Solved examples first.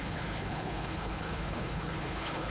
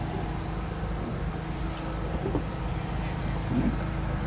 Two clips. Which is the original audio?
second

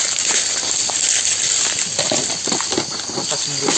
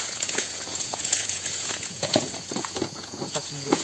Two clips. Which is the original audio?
first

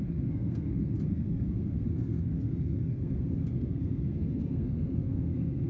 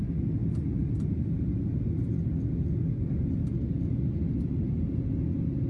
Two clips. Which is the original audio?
second